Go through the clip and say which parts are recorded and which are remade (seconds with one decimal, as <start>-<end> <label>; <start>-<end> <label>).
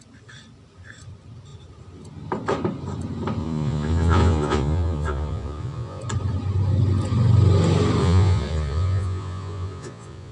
0.0-3.4 recorded; 3.4-6.0 remade; 6.0-8.0 recorded; 8.0-10.3 remade